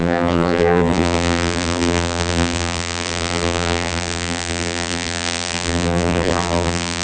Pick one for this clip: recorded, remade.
remade